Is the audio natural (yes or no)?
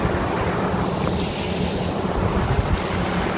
yes